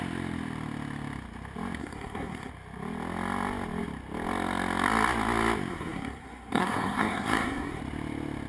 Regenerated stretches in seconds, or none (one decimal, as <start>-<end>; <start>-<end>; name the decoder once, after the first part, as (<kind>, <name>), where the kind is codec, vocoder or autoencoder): 1.8-2.5 (codec, SNAC); 5.7-7.8